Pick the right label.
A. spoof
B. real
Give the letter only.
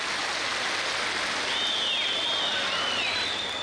B